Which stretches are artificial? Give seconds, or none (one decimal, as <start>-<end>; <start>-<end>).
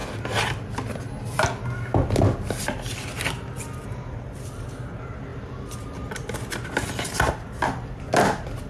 none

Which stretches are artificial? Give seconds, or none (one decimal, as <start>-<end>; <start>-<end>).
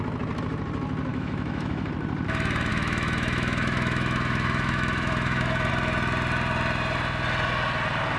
1.1-1.9; 2.7-5.7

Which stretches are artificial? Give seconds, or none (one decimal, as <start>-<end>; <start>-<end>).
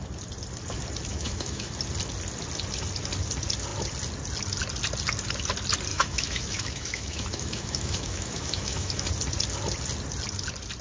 1.1-1.7; 5.9-9.1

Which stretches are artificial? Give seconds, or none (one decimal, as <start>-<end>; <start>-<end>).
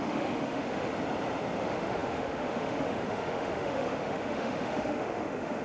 0.0-0.9; 1.6-5.6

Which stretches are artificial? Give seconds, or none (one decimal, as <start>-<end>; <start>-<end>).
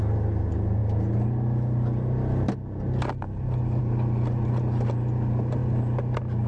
none